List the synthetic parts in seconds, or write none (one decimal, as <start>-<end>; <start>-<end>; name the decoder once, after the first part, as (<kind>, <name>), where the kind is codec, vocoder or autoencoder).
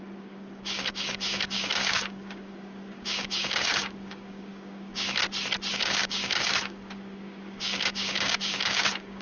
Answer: 0.0-5.2 (codec, DAC); 5.7-9.2